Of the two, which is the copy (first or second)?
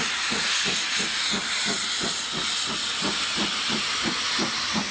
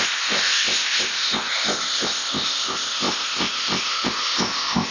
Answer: second